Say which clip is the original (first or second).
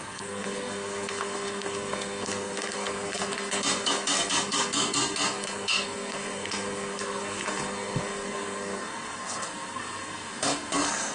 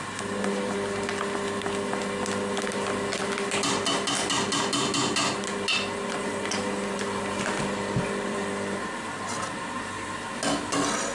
second